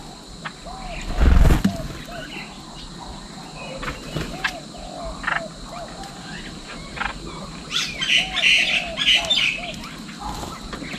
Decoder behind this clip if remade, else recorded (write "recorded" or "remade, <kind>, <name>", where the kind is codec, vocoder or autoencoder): recorded